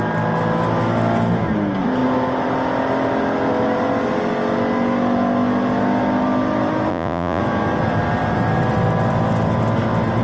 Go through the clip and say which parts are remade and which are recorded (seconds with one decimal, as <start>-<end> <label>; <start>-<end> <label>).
0.0-6.9 recorded; 6.9-7.4 remade; 7.4-10.2 recorded